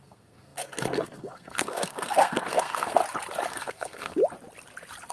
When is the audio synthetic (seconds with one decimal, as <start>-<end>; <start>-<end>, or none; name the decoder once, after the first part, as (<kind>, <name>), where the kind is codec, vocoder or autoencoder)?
0.0-3.0 (codec, SNAC); 3.5-4.2